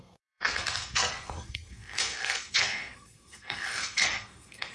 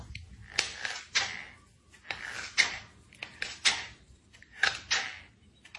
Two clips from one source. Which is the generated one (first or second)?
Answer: first